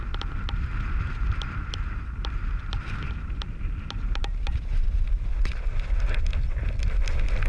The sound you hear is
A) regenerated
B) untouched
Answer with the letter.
B